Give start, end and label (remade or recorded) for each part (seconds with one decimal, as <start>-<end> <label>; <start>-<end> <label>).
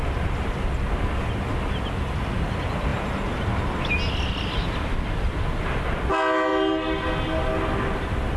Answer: 0.0-8.4 recorded